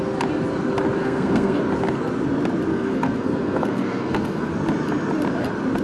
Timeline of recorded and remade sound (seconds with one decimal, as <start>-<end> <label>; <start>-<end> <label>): 0.0-1.0 recorded; 1.0-1.6 remade; 1.6-2.7 recorded; 2.7-4.5 remade; 4.5-5.8 recorded

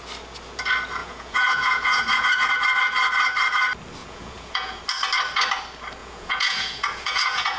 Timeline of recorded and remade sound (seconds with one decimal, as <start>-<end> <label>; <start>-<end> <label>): 0.0-1.0 recorded; 1.0-2.5 remade; 2.5-4.0 recorded; 4.0-4.8 remade; 4.8-6.0 recorded; 6.0-7.6 remade

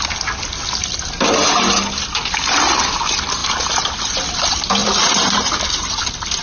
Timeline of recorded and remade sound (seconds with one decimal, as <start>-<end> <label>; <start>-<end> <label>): 0.0-3.4 recorded; 3.4-4.0 remade; 4.0-4.8 recorded; 4.8-6.0 remade; 6.0-6.4 recorded

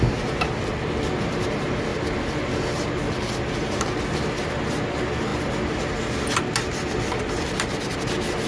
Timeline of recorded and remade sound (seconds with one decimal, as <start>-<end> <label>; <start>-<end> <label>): 0.0-8.5 recorded

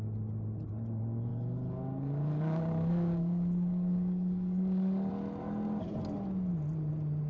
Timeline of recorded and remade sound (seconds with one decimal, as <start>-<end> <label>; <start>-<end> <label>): 0.0-1.3 recorded; 1.3-5.1 remade; 5.1-7.3 recorded

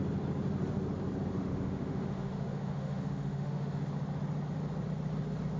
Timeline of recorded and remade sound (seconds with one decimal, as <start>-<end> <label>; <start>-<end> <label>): 0.0-1.4 recorded; 1.4-3.8 remade; 3.8-5.6 recorded

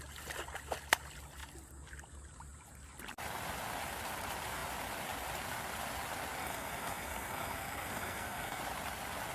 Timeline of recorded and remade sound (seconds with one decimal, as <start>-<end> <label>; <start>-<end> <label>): 0.0-6.4 recorded; 6.4-8.6 remade; 8.6-9.3 recorded

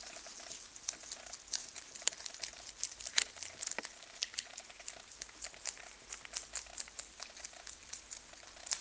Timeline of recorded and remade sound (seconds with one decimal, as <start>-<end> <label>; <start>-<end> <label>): 0.0-1.6 recorded; 1.6-2.2 remade; 2.2-8.8 recorded